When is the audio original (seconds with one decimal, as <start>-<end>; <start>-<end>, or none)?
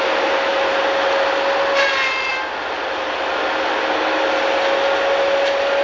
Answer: 0.0-5.8